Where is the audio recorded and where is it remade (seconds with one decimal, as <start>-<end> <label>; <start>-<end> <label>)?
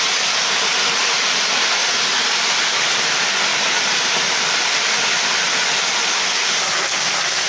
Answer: 0.0-1.8 remade; 1.8-2.5 recorded; 2.5-3.5 remade; 3.5-4.3 recorded; 4.3-7.5 remade